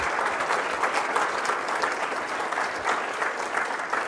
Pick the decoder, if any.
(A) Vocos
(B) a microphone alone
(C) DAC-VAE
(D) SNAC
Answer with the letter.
B